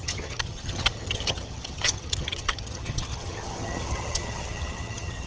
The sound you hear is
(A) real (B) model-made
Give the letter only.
B